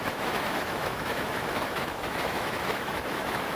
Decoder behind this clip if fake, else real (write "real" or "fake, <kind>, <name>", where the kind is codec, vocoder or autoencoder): fake, autoencoder, DAC-VAE